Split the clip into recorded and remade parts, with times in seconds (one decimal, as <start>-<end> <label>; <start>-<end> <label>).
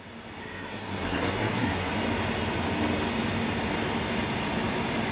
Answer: 0.0-0.4 recorded; 0.4-1.9 remade; 1.9-5.1 recorded